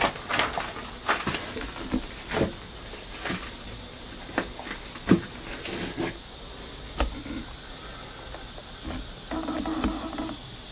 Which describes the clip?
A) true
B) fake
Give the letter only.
A